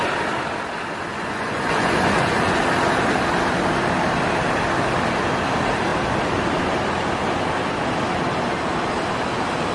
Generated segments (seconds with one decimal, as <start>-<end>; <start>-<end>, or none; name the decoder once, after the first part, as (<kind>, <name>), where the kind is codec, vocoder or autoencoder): 1.1-2.6 (vocoder, Vocos)